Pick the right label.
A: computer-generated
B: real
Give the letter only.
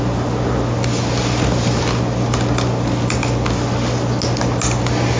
B